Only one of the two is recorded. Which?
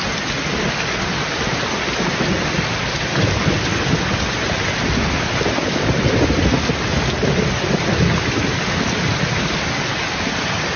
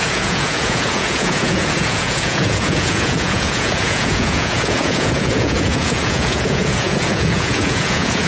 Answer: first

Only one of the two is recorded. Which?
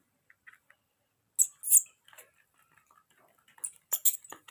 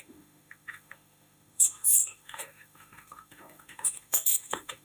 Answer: first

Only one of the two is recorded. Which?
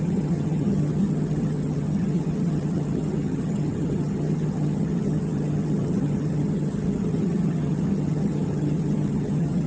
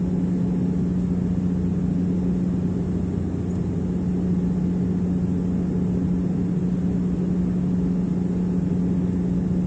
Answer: second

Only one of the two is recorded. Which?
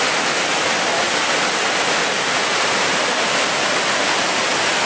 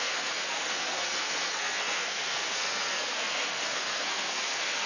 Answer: first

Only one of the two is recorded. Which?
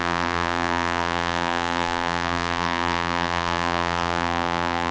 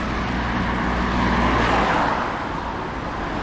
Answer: second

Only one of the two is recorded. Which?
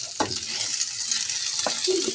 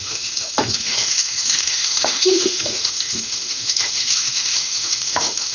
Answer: first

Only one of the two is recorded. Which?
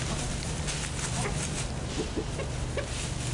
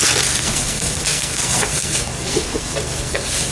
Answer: first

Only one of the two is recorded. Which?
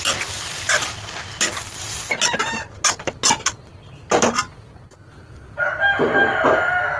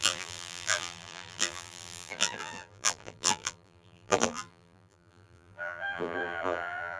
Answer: first